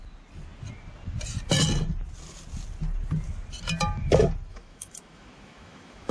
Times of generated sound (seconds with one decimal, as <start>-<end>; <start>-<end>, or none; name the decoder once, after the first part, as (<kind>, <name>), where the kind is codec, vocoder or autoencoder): 4.5-6.1 (autoencoder, DAC-VAE)